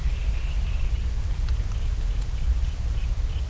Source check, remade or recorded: recorded